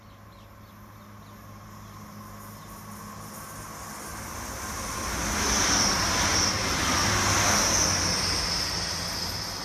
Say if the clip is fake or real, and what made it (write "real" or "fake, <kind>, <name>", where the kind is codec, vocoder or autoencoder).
real